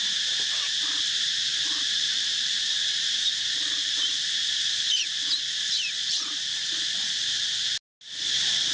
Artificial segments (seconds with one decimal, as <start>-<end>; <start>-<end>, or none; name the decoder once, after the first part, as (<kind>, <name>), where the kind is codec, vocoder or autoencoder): 1.5-6.7 (vocoder, BigVGAN v2)